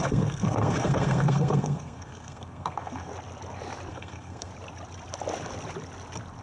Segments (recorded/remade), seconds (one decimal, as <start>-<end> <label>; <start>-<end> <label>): 0.0-3.1 remade; 3.1-3.9 recorded; 3.9-4.5 remade; 4.5-6.4 recorded